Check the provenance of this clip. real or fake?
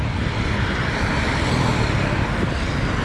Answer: real